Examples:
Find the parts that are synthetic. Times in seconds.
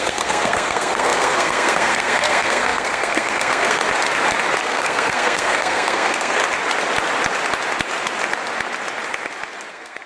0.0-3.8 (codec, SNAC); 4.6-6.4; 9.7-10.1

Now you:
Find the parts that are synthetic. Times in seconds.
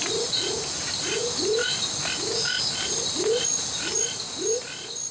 none